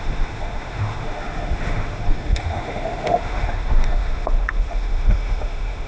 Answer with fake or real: fake